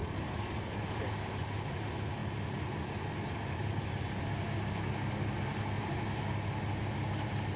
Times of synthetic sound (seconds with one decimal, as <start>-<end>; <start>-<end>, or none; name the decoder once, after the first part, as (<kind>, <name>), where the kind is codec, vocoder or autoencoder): none